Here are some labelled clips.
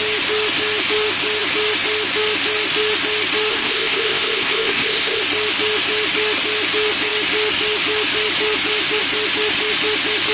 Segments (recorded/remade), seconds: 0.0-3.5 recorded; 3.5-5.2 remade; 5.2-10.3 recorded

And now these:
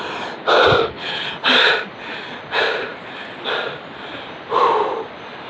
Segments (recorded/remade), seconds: 0.0-0.8 recorded; 0.8-1.3 remade; 1.3-5.5 recorded

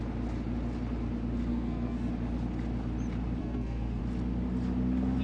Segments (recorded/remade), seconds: 0.0-1.5 recorded; 1.5-2.1 remade; 2.1-3.4 recorded; 3.4-4.0 remade; 4.0-5.2 recorded

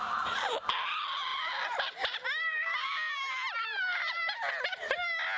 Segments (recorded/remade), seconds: 0.0-1.3 recorded; 1.3-4.5 remade; 4.5-5.4 recorded

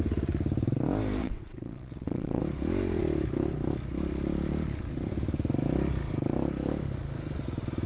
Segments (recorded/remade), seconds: 0.0-1.2 recorded; 1.2-2.4 remade; 2.4-7.9 recorded